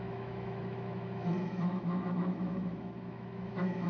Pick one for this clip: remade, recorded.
remade